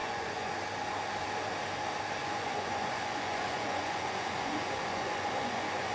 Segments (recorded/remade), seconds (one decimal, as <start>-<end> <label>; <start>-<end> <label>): 0.0-0.5 remade; 0.5-2.2 recorded; 2.2-5.9 remade